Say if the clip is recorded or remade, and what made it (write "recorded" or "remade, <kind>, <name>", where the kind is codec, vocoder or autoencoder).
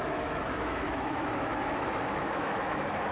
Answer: remade, autoencoder, DAC-VAE